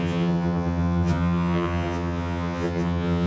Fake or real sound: fake